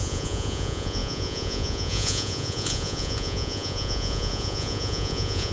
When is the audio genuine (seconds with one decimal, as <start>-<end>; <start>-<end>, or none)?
none